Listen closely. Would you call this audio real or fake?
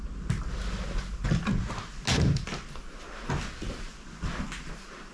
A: real